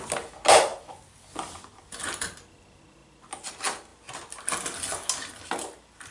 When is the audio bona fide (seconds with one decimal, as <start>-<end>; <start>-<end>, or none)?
0.0-6.1